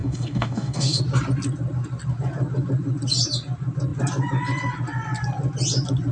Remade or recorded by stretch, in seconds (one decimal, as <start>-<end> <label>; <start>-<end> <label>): 0.0-1.0 remade; 1.0-6.1 recorded